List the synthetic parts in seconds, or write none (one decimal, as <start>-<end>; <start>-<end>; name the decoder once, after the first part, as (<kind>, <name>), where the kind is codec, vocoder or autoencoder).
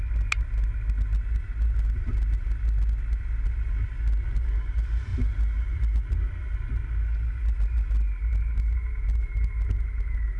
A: none